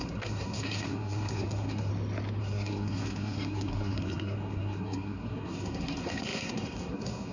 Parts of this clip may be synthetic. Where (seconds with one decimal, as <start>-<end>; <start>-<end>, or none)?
0.0-1.9; 2.4-7.3